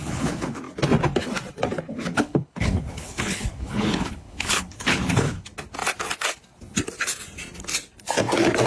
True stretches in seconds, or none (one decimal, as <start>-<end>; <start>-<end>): 0.6-1.9; 5.5-8.7